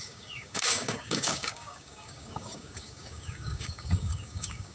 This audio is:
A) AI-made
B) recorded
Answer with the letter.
A